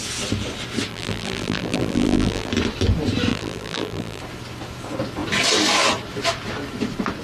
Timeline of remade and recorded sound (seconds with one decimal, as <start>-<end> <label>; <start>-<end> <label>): 0.0-0.9 recorded; 0.9-2.5 remade; 2.5-3.3 recorded; 3.3-4.2 remade; 4.2-7.2 recorded